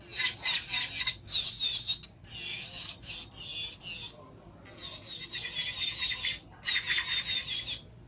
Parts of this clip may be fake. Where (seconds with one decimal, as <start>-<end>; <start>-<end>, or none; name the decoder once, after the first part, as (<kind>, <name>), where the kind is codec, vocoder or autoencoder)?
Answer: 2.5-3.1 (autoencoder, DAC-VAE)